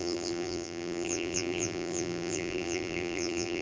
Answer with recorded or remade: remade